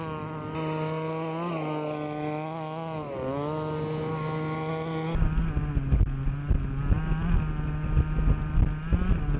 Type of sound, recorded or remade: recorded